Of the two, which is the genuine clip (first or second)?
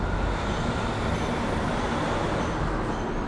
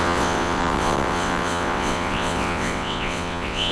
first